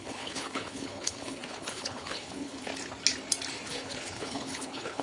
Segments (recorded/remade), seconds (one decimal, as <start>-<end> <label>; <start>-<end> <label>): 0.0-2.7 remade; 2.7-3.7 recorded; 3.7-5.0 remade